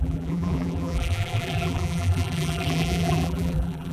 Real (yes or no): no